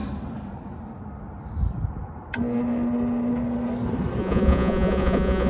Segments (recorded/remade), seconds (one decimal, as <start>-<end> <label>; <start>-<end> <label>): 0.0-4.2 recorded; 4.2-5.5 remade